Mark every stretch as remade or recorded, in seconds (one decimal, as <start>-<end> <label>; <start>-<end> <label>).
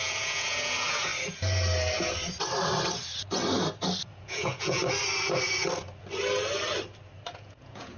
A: 0.0-1.1 remade; 1.1-4.1 recorded; 4.1-4.8 remade; 4.8-7.3 recorded; 7.3-8.0 remade